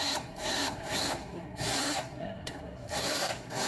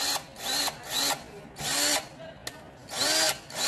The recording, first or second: second